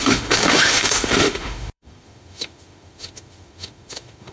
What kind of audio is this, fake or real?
fake